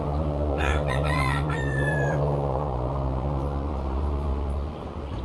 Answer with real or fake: fake